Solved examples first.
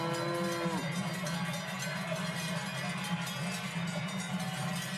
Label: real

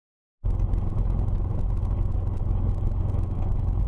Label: real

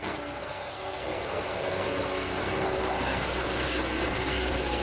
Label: fake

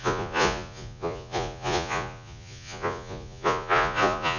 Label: fake